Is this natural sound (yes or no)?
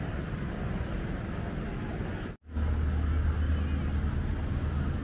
yes